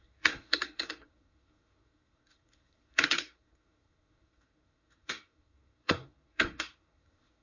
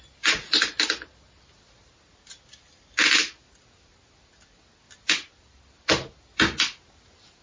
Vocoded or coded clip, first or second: first